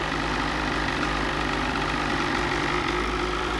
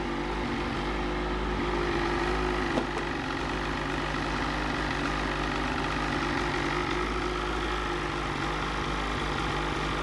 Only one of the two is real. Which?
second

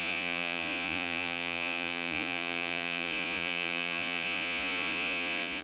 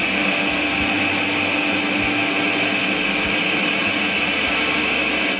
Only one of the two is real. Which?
second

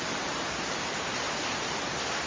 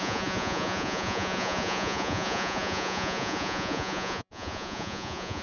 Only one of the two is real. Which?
first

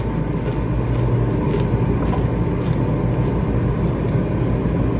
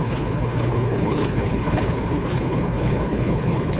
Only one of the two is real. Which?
first